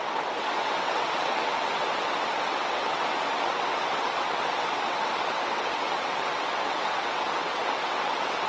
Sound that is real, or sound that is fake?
fake